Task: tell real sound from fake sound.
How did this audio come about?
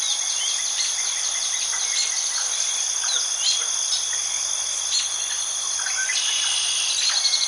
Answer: real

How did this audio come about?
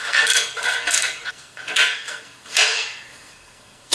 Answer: fake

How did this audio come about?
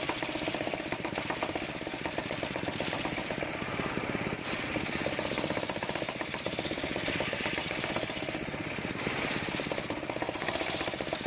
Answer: real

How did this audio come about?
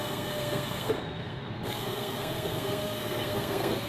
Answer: fake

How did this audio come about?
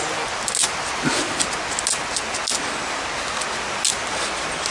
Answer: real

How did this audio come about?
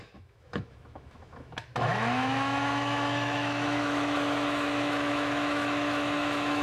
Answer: fake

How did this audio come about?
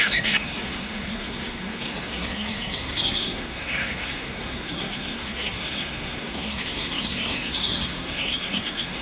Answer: fake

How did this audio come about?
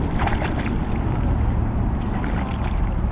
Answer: real